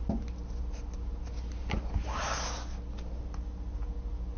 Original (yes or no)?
yes